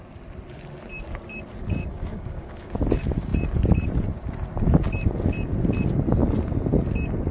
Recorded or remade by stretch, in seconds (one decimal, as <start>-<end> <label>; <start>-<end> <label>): 0.0-1.8 recorded; 1.8-2.7 remade; 2.7-7.3 recorded